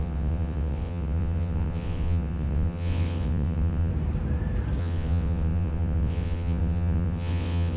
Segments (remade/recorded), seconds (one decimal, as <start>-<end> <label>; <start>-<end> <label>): 0.0-3.9 remade; 3.9-4.8 recorded; 4.8-7.8 remade

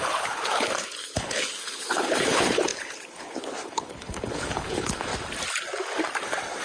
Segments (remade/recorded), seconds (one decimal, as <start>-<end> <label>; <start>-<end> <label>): 0.0-5.1 remade; 5.1-6.6 recorded

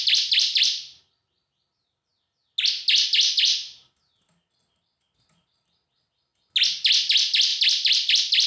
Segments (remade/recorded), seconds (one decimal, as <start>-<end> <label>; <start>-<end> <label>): 0.0-8.5 recorded